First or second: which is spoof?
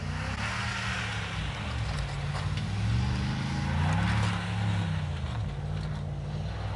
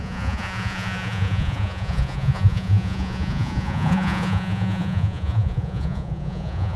second